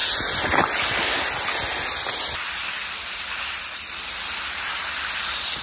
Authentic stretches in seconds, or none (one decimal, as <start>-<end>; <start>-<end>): 0.0-5.6